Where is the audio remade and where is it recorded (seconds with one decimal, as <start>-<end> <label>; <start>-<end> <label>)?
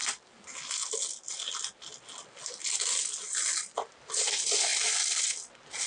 0.0-5.9 recorded